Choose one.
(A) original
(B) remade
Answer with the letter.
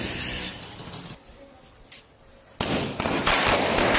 A